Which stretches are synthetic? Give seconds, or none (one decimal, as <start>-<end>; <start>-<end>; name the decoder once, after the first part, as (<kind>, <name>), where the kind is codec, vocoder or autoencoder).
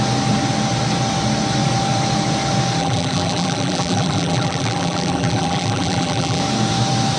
2.8-6.4 (vocoder, BigVGAN v2)